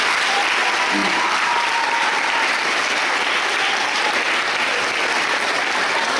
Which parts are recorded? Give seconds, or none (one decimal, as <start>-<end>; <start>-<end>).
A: 0.0-6.2